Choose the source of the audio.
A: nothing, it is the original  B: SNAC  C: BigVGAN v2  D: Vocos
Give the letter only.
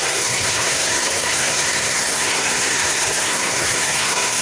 B